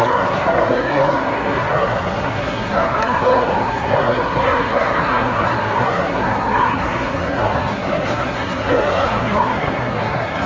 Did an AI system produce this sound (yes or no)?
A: yes